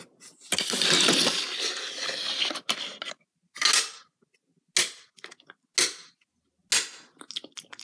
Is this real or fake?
real